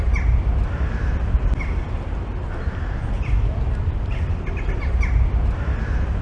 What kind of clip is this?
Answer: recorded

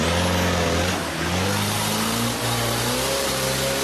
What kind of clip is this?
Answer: recorded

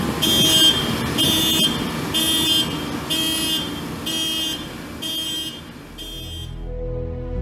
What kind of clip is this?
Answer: recorded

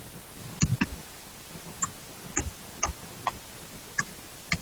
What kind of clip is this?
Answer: recorded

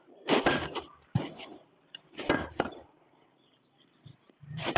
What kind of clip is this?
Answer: remade